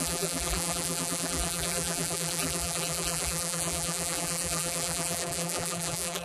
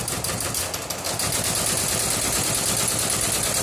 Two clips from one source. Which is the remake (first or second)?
first